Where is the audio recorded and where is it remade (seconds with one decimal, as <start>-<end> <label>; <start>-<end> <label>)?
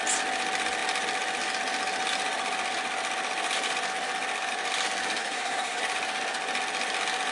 0.0-5.2 recorded; 5.2-5.8 remade; 5.8-7.3 recorded